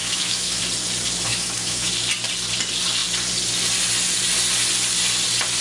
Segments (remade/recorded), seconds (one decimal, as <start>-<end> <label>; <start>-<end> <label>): 0.0-0.6 remade; 0.6-1.3 recorded; 1.3-1.9 remade; 1.9-5.6 recorded